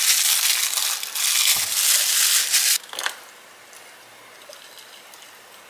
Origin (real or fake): real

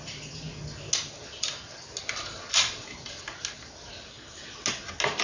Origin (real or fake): real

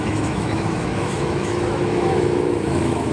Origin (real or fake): fake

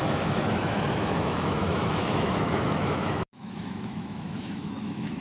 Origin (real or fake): fake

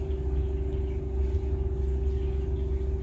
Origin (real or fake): real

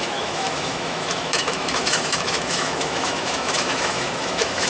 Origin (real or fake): fake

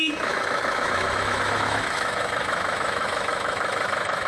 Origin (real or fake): fake